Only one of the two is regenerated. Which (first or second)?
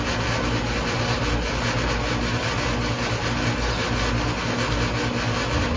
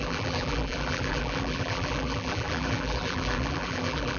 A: second